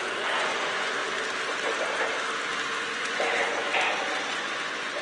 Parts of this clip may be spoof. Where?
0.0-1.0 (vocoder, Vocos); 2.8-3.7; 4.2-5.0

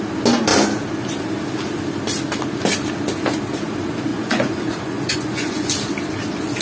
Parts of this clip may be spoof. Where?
4.1-5.7 (vocoder, Vocos)

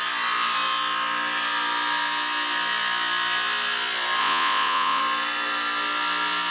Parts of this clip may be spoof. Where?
4.2-5.0 (vocoder, Vocos)

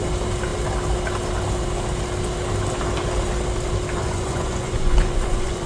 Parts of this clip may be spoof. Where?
4.0-5.7 (vocoder, Vocos)

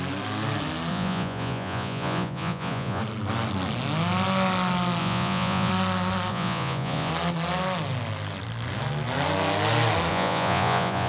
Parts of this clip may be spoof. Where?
0.9-3.0 (vocoder, Vocos); 5.0-5.7; 6.3-7.1; 10.1-11.1

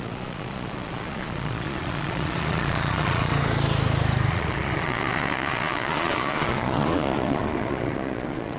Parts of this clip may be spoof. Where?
0.0-3.3 (vocoder, Vocos); 4.3-8.6